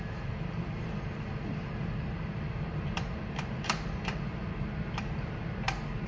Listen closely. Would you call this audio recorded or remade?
remade